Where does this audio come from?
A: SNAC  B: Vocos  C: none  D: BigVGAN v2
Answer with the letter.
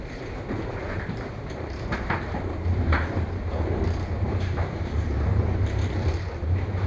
D